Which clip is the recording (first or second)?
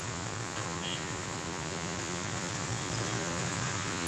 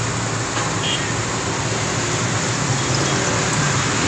second